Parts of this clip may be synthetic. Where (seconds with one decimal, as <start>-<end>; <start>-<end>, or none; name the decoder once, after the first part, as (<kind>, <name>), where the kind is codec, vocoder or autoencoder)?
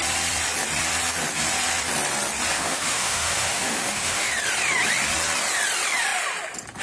2.5-4.3 (autoencoder, DAC-VAE)